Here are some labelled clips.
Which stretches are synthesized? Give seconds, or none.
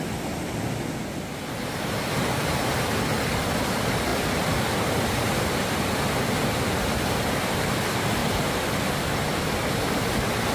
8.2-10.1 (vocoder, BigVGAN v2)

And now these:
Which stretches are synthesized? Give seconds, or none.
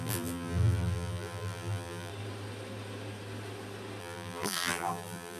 0.0-2.1 (vocoder, BigVGAN v2); 4.0-5.4